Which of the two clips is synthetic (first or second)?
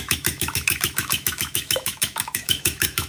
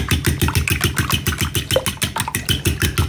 first